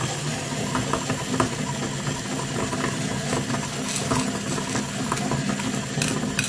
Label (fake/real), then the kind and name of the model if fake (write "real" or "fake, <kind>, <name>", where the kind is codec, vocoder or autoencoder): real